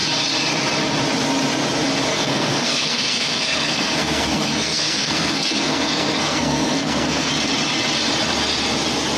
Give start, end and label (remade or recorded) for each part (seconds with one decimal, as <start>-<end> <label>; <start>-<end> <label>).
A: 0.0-2.1 recorded; 2.1-7.3 remade; 7.3-9.2 recorded